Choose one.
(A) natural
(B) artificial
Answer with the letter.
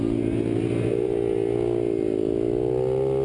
A